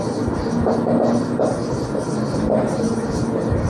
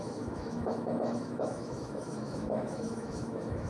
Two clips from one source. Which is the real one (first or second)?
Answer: first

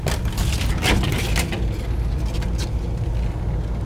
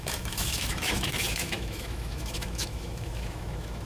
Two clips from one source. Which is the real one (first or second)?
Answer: first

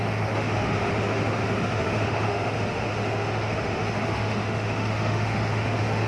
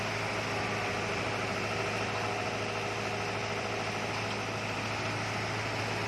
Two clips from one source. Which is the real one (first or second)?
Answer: second